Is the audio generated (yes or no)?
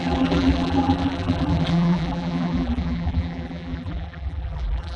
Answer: yes